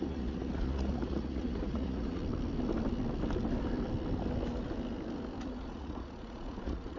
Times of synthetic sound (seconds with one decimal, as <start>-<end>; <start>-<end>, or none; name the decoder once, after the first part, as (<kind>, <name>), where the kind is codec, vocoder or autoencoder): 0.0-2.2 (vocoder, Vocos); 5.4-7.0